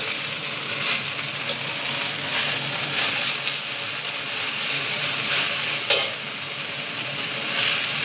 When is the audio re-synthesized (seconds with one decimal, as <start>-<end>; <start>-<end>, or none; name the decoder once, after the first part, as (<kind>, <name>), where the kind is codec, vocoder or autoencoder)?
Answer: none